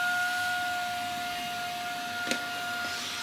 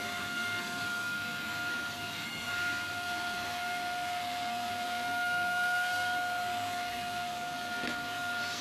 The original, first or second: first